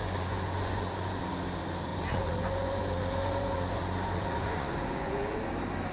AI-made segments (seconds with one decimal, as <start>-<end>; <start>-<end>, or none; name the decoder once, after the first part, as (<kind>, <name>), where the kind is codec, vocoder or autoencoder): 0.0-1.3 (vocoder, Vocos); 1.9-5.4